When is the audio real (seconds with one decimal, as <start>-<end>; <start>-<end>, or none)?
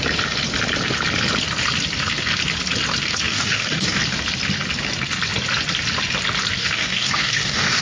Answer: 0.0-3.3; 4.0-6.6